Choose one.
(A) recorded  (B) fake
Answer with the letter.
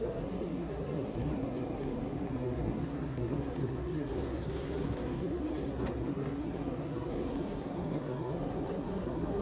B